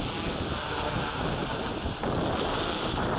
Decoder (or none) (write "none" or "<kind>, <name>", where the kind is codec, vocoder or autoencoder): none